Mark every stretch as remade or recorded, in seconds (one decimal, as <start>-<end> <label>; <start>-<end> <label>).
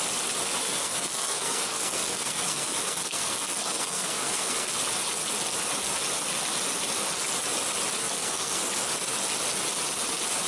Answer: 0.0-0.6 recorded; 0.6-4.7 remade; 4.7-8.0 recorded; 8.0-8.6 remade; 8.6-10.5 recorded